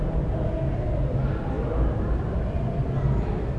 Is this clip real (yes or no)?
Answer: yes